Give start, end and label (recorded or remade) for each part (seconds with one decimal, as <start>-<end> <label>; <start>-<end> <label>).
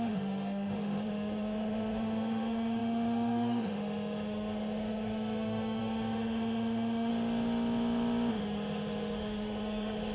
0.0-7.1 remade; 7.1-8.3 recorded; 8.3-10.1 remade